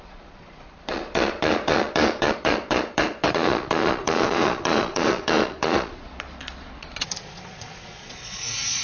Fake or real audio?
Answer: fake